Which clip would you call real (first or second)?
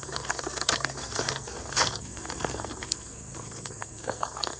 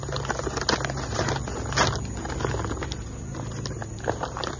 second